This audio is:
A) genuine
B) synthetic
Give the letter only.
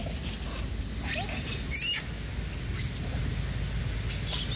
A